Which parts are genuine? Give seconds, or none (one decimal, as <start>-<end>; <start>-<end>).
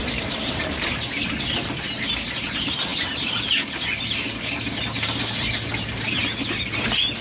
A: 6.2-7.2